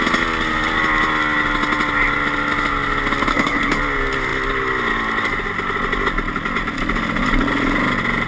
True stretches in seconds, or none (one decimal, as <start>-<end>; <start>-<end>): 0.0-3.3; 3.8-8.3